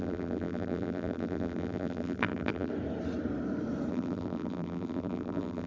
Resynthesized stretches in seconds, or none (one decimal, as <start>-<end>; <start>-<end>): 0.0-2.7; 3.9-5.7